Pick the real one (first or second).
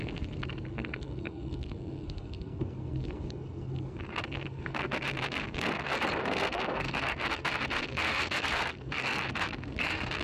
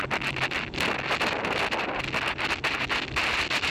second